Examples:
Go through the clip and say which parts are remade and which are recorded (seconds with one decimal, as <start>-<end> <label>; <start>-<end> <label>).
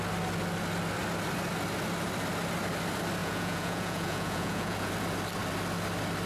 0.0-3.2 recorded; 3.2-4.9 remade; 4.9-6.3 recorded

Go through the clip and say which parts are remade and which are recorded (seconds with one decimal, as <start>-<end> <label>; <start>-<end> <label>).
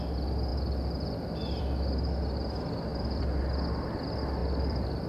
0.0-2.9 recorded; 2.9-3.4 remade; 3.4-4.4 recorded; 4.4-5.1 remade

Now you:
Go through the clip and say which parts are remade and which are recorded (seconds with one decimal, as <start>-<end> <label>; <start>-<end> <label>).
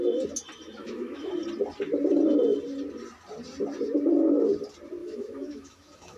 0.0-0.8 recorded; 0.8-1.3 remade; 1.3-5.0 recorded; 5.0-6.2 remade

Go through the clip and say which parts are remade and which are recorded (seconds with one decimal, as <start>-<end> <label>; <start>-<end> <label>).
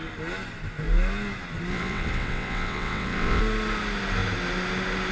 0.0-1.7 recorded; 1.7-3.4 remade; 3.4-5.1 recorded